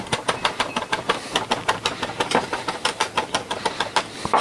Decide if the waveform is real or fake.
real